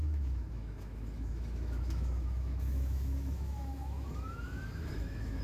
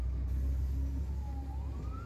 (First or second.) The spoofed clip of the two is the first